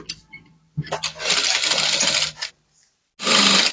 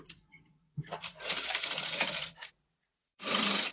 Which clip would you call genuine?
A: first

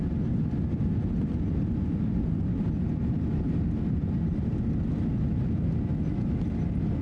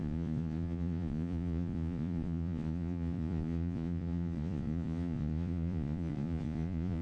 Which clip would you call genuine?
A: first